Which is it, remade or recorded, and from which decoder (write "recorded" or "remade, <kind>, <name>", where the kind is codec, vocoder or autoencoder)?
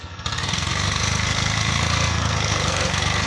remade, codec, SNAC